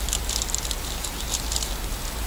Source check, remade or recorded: recorded